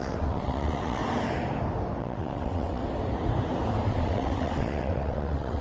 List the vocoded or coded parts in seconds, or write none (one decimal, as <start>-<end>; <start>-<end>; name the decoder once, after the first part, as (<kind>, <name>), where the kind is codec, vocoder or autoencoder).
0.0-1.0 (vocoder, WaveNeXt); 2.0-2.8; 3.9-5.6